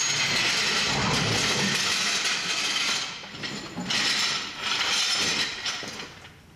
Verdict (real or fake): real